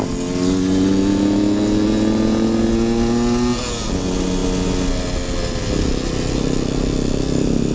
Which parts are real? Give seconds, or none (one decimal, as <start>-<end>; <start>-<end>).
0.0-7.7